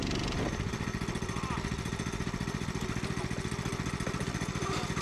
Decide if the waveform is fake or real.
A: real